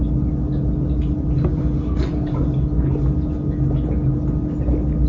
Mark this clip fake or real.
real